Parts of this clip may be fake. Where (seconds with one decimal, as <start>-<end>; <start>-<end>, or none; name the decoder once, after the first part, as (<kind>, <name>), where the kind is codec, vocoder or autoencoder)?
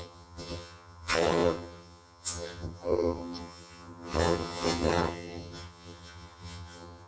0.0-7.1 (vocoder, HiFi-GAN)